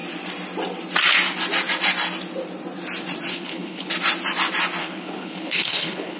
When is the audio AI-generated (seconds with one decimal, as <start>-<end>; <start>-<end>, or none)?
3.3-3.9; 4.8-6.2